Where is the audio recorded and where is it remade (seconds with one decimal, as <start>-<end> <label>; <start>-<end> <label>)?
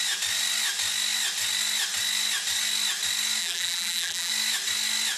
0.0-3.4 recorded; 3.4-4.3 remade; 4.3-5.2 recorded